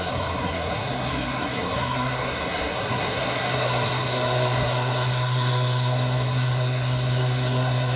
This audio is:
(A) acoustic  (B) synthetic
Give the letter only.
B